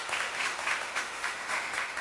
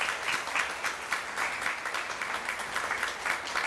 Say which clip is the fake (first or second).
first